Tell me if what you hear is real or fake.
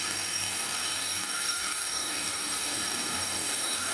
fake